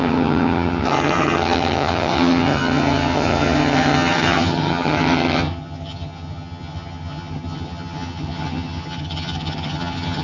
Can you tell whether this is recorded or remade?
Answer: remade